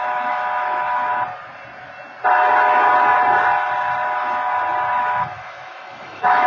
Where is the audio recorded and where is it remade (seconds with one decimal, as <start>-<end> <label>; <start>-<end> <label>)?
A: 0.0-1.1 remade; 1.1-5.0 recorded; 5.0-6.5 remade